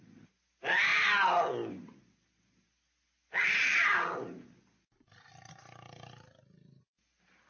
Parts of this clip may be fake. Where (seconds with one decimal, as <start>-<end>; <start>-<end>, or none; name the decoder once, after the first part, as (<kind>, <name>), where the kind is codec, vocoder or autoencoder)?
none